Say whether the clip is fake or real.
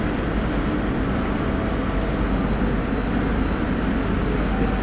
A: real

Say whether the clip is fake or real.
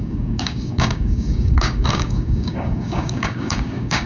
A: fake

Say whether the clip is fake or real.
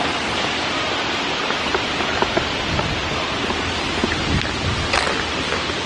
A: real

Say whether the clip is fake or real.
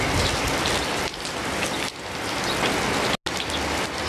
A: real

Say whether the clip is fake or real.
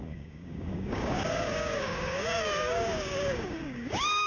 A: fake